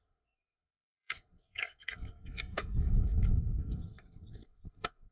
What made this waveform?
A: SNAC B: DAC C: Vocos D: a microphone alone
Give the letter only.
A